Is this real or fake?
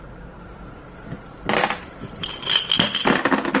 real